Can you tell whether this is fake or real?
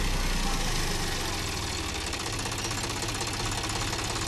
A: real